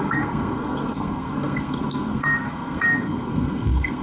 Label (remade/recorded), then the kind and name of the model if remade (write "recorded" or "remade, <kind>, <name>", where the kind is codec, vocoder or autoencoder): remade, codec, SNAC